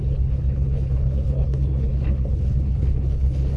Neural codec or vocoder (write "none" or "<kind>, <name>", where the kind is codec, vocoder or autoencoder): codec, HILCodec